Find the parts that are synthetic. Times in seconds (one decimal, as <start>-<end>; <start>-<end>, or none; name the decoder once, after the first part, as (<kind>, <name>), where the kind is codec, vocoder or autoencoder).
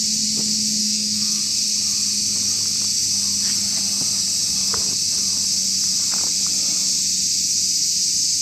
0.8-1.4 (codec, SNAC)